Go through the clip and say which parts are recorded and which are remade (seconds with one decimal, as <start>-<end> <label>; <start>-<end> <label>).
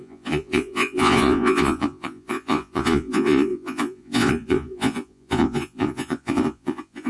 0.0-7.1 remade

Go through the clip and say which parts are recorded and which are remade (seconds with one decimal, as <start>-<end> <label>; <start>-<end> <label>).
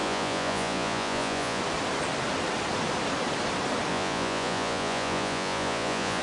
0.0-1.6 remade; 1.6-3.9 recorded; 3.9-6.2 remade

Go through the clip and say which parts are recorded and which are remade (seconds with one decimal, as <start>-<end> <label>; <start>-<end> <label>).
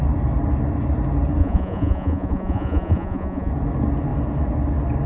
0.0-1.4 recorded; 1.4-3.5 remade; 3.5-5.1 recorded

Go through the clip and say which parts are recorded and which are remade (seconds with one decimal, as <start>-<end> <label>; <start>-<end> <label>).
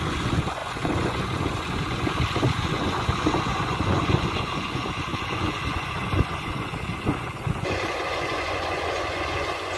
0.0-9.8 remade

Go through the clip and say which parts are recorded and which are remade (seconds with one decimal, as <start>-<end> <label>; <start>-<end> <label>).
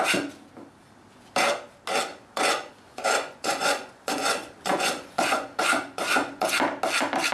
0.0-2.1 recorded; 2.1-6.5 remade; 6.5-7.3 recorded